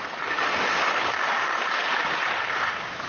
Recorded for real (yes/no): yes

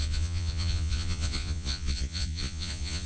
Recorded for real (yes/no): no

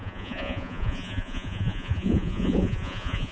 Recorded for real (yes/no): no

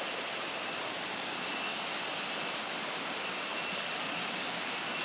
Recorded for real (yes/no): yes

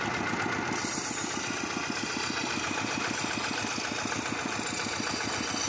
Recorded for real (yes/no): yes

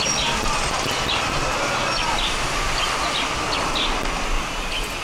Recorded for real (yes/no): yes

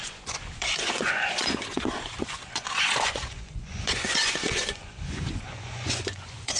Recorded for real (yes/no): no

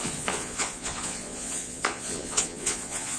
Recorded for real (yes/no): no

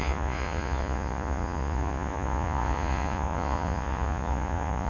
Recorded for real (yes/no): no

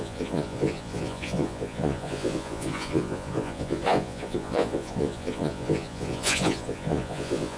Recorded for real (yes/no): no